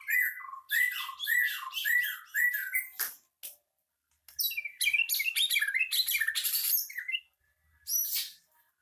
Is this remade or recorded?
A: recorded